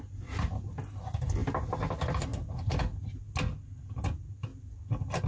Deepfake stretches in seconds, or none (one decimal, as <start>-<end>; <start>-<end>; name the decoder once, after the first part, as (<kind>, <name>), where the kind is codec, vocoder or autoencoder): none